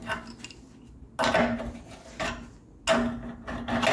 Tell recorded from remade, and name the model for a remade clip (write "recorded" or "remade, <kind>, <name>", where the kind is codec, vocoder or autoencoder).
recorded